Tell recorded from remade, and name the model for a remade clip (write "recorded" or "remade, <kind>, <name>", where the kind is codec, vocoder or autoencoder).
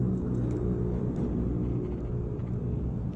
recorded